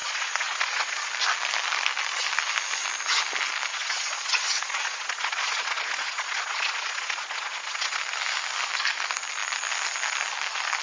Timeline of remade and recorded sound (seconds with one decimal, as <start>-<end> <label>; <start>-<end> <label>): 0.0-1.1 remade; 1.1-3.7 recorded; 3.7-8.0 remade; 8.0-10.8 recorded